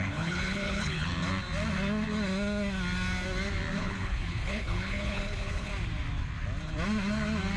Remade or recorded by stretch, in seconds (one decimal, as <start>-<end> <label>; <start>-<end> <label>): 0.0-1.1 remade; 1.1-3.8 recorded; 3.8-5.7 remade; 5.7-7.6 recorded

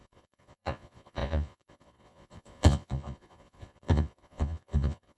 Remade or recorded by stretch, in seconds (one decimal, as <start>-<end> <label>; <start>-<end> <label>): 0.0-5.2 remade

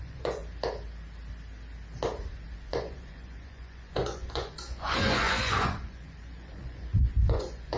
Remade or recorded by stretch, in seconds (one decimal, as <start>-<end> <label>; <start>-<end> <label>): 0.0-0.4 remade; 0.4-2.6 recorded; 2.6-7.8 remade

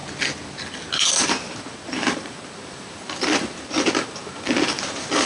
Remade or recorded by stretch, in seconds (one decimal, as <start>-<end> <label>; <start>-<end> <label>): 0.0-0.9 recorded; 0.9-5.3 remade

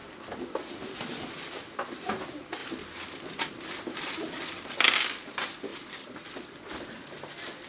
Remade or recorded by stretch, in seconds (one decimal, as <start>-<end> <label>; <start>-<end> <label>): 0.0-2.1 remade; 2.1-2.6 recorded; 2.6-4.8 remade; 4.8-5.7 recorded; 5.7-7.7 remade